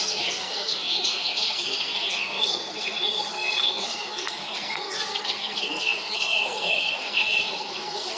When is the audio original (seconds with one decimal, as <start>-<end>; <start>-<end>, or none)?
none